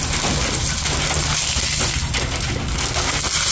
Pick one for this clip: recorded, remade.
recorded